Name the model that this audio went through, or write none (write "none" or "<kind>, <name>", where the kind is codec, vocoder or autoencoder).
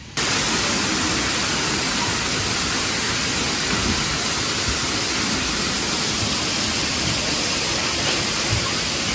none